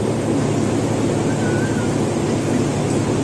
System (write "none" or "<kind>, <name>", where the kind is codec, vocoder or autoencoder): none